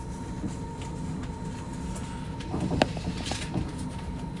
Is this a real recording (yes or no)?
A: yes